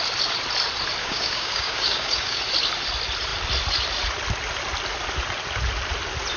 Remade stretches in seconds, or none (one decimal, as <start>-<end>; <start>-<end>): 1.0-2.4